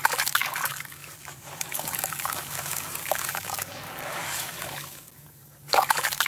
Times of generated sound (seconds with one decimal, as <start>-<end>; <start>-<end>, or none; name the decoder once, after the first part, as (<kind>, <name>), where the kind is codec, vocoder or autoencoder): 0.0-6.3 (codec, DAC)